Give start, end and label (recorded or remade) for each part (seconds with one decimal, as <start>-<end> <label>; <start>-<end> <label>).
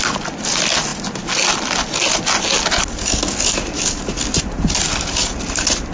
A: 0.0-5.9 recorded